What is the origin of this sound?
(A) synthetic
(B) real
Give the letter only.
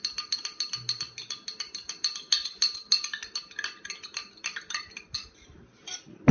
B